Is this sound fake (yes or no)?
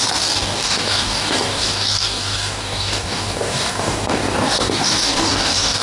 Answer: yes